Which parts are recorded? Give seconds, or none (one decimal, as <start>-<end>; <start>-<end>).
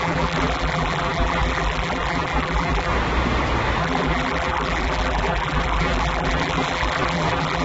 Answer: 2.9-3.8